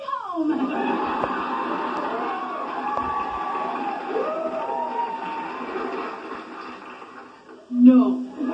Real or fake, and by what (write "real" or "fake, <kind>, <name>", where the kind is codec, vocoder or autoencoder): real